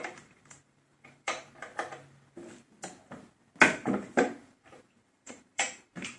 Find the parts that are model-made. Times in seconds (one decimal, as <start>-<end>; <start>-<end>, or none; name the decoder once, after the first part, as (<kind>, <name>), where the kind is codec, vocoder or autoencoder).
0.0-1.7 (vocoder, BigVGAN v2); 4.4-6.2